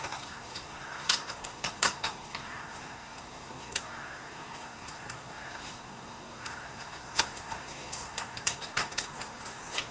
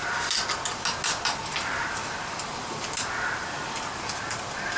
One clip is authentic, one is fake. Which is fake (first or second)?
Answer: first